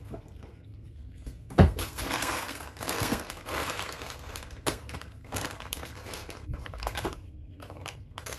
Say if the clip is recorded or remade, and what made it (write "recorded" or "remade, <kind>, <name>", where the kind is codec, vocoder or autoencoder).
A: remade, codec, SNAC